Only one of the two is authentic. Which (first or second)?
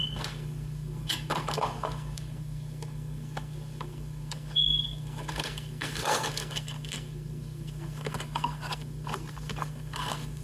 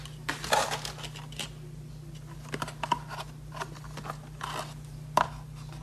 second